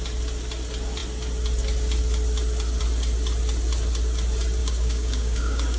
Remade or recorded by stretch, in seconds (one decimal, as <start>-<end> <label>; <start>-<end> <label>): 0.0-4.6 recorded; 4.6-5.8 remade